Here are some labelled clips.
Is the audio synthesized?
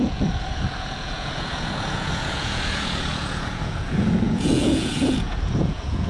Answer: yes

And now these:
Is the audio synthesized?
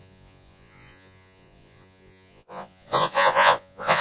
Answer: yes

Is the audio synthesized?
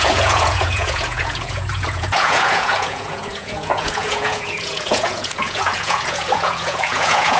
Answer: yes